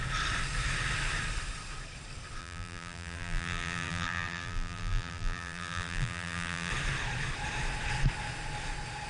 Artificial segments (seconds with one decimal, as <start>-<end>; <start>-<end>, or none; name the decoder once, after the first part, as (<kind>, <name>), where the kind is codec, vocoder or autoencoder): 2.4-6.7 (vocoder, BigVGAN v2)